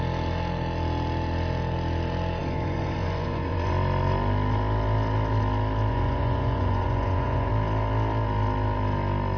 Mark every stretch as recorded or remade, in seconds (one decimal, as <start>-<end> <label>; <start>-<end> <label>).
0.0-2.4 recorded; 2.4-3.7 remade; 3.7-5.9 recorded; 5.9-7.5 remade; 7.5-9.4 recorded